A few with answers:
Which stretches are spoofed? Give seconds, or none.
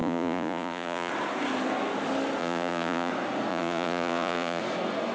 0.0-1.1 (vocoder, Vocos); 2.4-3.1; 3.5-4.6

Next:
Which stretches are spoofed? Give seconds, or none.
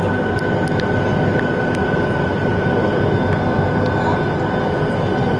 none